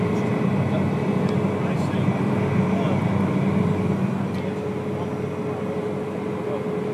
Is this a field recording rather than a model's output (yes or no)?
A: yes